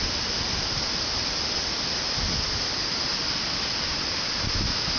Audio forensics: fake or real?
real